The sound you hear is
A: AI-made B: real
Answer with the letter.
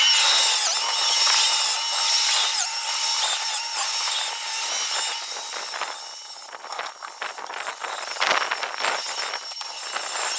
B